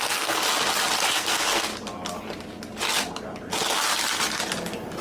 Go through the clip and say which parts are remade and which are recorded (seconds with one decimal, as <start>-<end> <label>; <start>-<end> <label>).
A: 0.0-0.4 remade; 0.4-1.1 recorded; 1.1-1.7 remade; 1.7-5.0 recorded